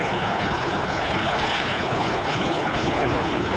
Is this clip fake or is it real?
fake